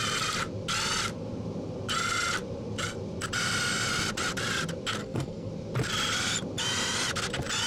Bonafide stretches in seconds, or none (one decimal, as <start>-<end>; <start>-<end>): 0.0-5.0; 5.5-7.7